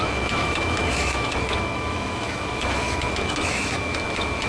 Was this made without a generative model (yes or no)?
no